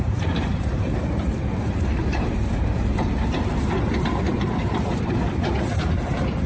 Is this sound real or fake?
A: fake